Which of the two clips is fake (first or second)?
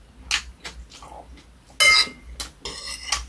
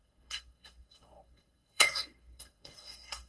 second